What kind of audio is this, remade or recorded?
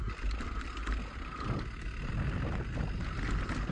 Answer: recorded